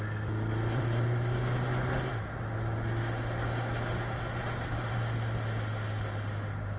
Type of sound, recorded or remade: recorded